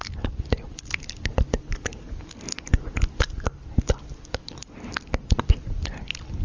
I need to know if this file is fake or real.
real